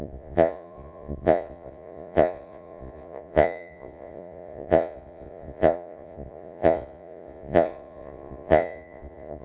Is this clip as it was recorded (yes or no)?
no